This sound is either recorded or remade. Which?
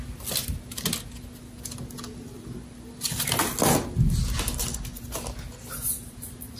recorded